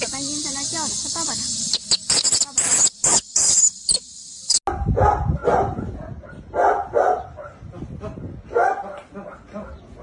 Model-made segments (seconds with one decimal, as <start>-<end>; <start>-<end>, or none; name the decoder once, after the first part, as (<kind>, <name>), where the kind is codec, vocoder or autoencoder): none